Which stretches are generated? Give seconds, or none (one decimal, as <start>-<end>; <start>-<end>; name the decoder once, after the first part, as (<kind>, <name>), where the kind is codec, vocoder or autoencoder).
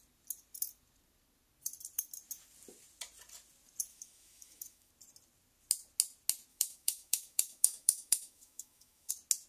3.9-4.9 (autoencoder, DAC-VAE); 6.5-9.1